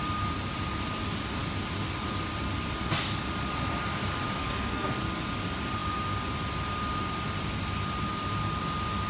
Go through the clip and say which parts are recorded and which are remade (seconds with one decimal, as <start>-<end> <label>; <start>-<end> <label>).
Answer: 0.0-4.4 recorded; 4.4-4.9 remade; 4.9-9.1 recorded